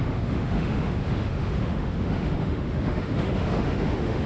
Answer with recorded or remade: remade